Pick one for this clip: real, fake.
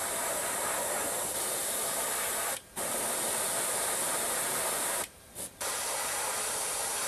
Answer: fake